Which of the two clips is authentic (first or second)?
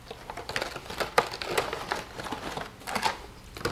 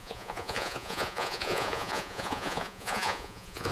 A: first